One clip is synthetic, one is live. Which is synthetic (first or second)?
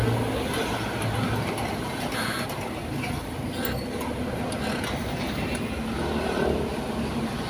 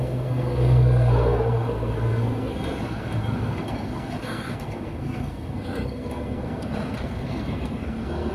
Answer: second